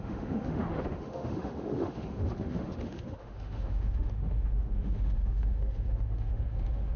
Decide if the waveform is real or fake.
fake